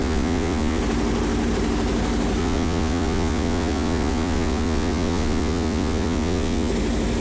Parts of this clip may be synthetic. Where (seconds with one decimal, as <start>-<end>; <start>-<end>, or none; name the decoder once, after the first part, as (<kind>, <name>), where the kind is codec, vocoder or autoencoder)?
0.0-0.8 (vocoder, Vocos); 2.4-6.7